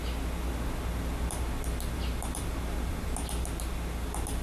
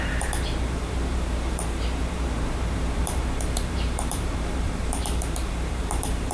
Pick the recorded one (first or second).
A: first